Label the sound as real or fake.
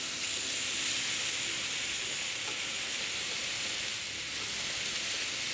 real